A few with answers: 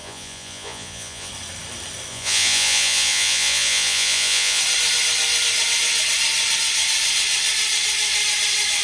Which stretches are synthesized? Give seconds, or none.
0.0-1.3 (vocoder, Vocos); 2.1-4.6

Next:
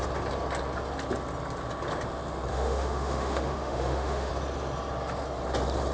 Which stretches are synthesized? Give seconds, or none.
2.5-4.3 (autoencoder, DAC-VAE)

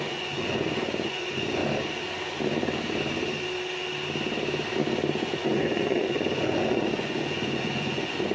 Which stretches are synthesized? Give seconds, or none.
0.0-1.6 (vocoder, Vocos); 5.2-8.3

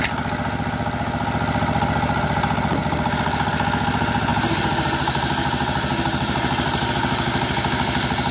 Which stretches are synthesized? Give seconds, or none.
4.3-6.9 (vocoder, BigVGAN v2)

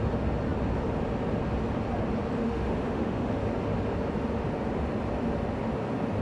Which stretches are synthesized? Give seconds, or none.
2.4-3.3 (autoencoder, DAC-VAE)

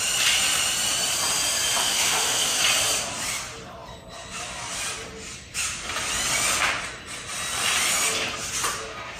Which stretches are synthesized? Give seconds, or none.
1.8-2.6 (autoencoder, DAC-VAE)

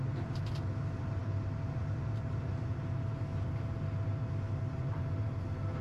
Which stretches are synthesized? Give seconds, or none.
none